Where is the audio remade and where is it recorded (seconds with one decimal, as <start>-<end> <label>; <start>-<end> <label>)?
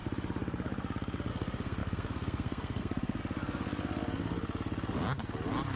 0.0-1.3 recorded; 1.3-3.2 remade; 3.2-5.8 recorded